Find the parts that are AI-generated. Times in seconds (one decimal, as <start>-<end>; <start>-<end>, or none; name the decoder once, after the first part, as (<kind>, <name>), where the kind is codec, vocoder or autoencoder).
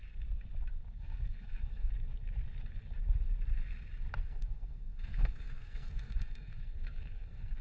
1.0-1.9 (codec, SNAC); 4.2-7.6